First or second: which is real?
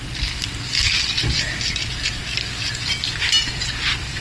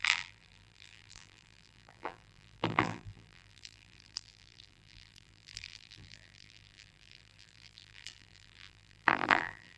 first